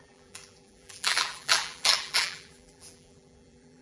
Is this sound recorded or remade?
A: remade